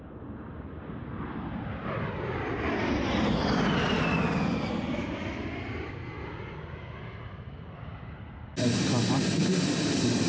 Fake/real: real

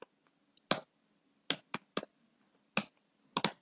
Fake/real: real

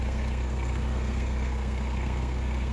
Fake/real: fake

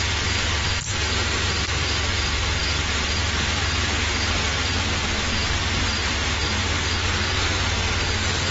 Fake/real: real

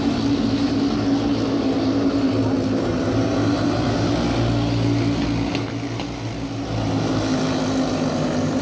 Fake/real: real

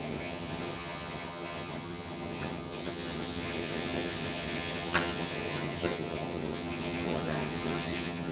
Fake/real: fake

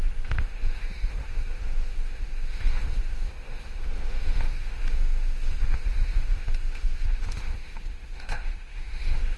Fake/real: fake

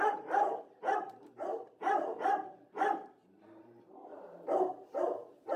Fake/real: fake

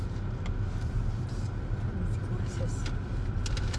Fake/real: real